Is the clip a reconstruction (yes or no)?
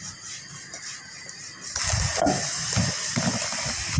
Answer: no